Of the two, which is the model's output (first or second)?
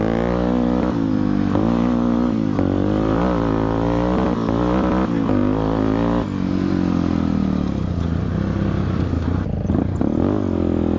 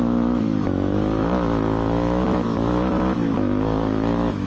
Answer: second